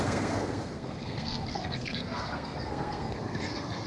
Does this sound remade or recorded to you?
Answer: remade